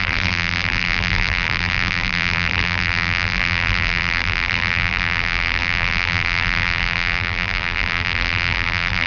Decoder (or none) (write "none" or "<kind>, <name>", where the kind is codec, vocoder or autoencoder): vocoder, BigVGAN v2